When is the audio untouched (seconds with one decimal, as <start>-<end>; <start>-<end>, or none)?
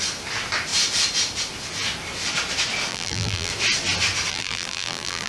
0.0-2.9; 3.5-4.3